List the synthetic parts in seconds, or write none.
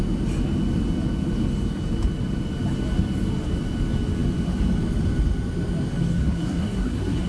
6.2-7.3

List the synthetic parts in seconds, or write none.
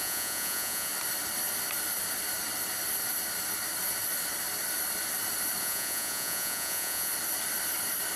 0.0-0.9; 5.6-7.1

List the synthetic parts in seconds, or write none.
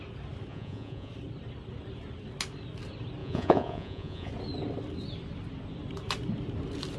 0.5-1.1; 3.2-4.3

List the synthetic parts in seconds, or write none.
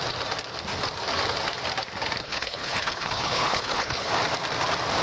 2.2-4.1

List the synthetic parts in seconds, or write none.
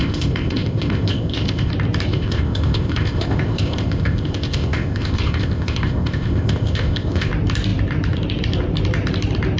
0.0-1.7; 2.1-7.3